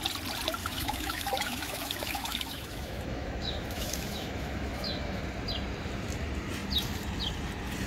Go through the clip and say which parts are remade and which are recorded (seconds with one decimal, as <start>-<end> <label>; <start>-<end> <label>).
0.0-0.6 recorded; 0.6-5.2 remade; 5.2-7.9 recorded